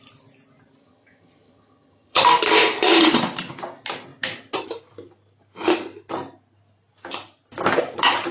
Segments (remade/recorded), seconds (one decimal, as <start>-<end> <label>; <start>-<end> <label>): 0.0-0.8 recorded; 0.8-2.2 remade; 2.2-8.3 recorded